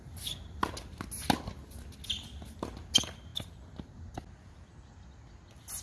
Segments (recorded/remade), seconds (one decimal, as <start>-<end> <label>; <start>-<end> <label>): 0.0-5.8 recorded